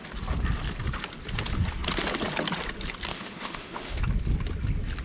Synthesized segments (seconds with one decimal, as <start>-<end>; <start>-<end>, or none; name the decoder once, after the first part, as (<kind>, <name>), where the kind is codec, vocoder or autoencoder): 3.1-4.0 (autoencoder, DAC-VAE)